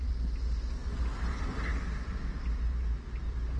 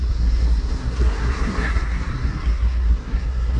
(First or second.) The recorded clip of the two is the first